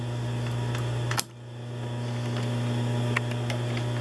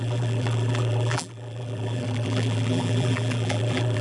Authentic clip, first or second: first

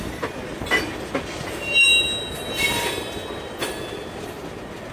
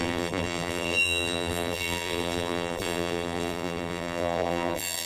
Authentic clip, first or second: first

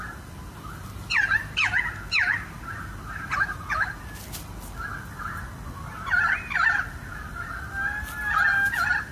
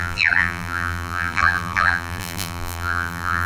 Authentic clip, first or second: first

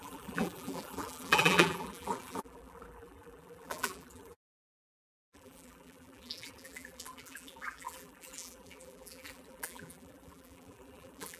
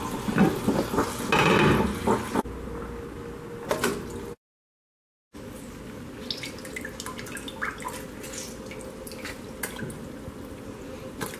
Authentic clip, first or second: second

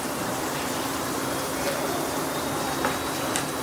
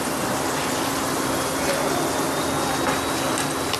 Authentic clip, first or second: second